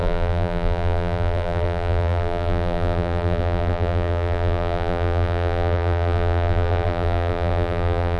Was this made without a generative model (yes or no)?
no